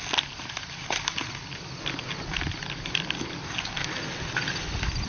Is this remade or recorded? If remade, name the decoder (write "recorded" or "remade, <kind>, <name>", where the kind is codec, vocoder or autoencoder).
recorded